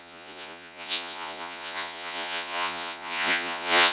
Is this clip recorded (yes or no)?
no